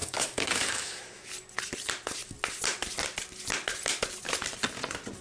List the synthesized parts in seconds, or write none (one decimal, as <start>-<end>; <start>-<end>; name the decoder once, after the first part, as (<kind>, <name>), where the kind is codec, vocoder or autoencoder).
0.0-1.3 (autoencoder, DAC-VAE)